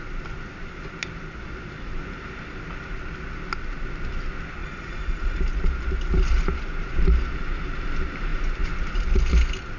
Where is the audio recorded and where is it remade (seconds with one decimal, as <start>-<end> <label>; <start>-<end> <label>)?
0.0-4.6 recorded; 4.6-5.4 remade; 5.4-9.8 recorded